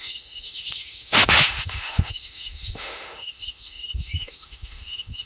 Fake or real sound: fake